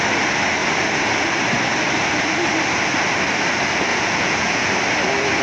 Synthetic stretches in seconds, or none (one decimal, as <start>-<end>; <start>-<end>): 3.9-4.7